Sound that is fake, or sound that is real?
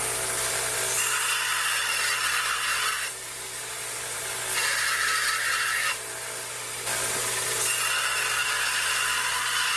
real